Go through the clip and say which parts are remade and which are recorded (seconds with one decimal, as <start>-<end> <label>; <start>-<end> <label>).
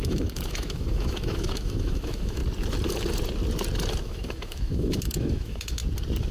0.0-2.4 remade; 2.4-4.0 recorded; 4.0-5.8 remade; 5.8-6.3 recorded